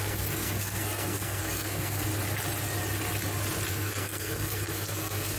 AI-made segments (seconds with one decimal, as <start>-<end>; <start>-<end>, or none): 0.0-2.1; 3.7-5.4